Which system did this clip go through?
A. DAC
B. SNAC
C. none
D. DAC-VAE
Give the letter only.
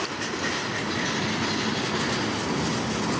C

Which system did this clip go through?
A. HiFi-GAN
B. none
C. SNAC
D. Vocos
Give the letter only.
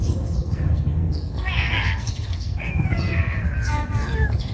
C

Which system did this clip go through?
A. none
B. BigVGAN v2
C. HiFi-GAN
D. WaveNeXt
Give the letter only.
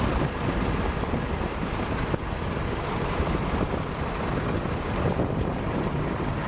B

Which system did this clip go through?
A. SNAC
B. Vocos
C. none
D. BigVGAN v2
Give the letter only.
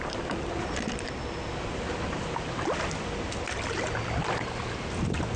C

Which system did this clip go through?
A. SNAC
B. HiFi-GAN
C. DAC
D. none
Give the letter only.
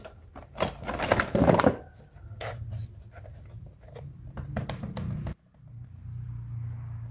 D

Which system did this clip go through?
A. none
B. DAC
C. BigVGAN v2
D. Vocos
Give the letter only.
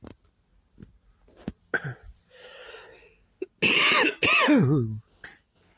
A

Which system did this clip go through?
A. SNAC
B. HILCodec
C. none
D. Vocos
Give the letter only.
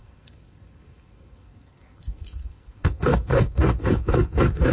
A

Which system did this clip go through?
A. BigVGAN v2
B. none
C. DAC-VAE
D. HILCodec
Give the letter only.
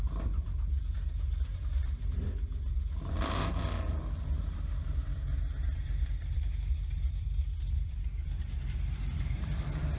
A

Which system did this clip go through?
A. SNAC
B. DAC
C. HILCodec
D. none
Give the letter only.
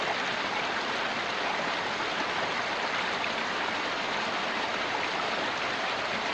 D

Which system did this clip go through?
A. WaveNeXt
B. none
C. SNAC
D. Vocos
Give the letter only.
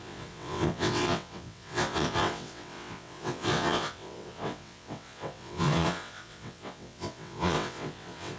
A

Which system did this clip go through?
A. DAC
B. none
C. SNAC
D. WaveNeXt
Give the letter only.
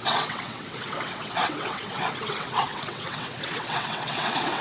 D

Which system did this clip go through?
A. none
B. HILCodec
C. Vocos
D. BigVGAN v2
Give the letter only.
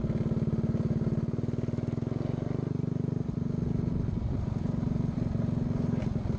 A